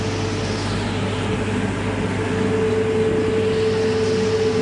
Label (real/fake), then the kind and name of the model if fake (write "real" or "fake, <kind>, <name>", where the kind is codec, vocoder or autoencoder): real